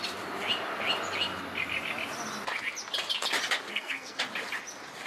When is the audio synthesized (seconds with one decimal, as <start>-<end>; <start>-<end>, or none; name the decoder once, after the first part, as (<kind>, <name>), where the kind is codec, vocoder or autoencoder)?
3.7-4.2 (codec, SNAC)